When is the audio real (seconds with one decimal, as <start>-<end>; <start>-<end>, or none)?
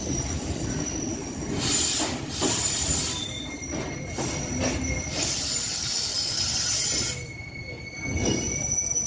0.0-9.1